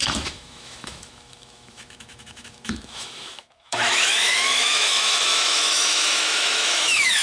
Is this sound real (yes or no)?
no